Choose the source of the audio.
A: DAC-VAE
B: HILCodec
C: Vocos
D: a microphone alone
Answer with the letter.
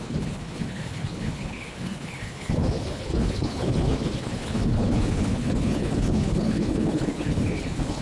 B